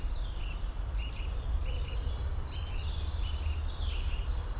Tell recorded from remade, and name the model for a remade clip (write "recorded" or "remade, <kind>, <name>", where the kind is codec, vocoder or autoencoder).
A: recorded